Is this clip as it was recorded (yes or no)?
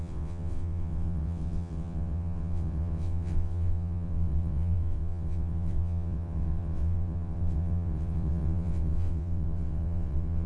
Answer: no